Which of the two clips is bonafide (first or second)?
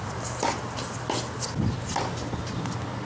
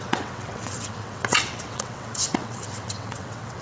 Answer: first